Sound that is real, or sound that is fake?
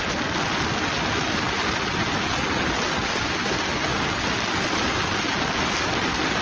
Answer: real